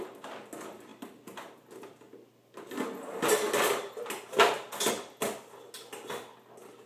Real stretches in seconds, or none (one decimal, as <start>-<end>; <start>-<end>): 0.0-6.9